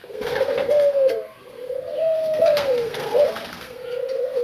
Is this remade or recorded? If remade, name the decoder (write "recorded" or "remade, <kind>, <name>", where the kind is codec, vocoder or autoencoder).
remade, codec, SNAC